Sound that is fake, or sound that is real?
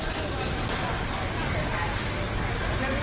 real